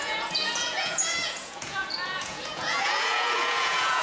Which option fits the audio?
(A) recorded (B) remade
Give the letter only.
B